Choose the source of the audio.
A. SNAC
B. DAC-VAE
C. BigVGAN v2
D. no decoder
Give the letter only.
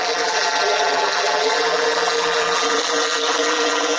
C